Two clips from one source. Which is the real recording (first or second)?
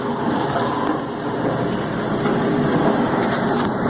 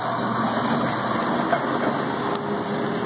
second